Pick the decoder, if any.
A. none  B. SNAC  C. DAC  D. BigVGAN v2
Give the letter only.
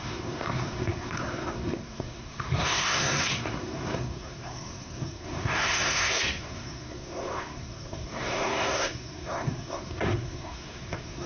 B